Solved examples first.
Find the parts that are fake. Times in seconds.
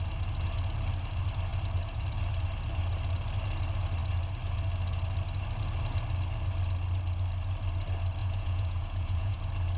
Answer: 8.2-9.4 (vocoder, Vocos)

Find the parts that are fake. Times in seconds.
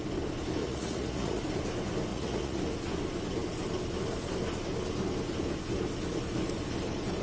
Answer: 0.6-1.4 (vocoder, Vocos); 2.1-2.6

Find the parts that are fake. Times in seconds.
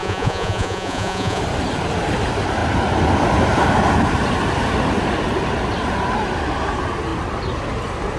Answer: 0.0-1.4 (vocoder, Vocos)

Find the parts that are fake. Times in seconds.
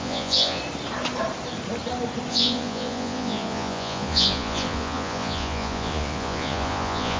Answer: 0.0-0.6 (vocoder, Vocos); 2.3-7.2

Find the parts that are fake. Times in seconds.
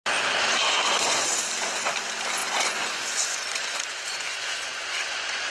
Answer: 0.6-1.3 (vocoder, Vocos); 2.4-5.5